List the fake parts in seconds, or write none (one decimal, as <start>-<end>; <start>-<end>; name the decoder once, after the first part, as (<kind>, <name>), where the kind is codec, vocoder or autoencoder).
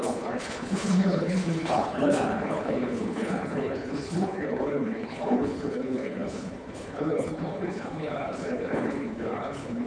0.0-9.9 (codec, HILCodec)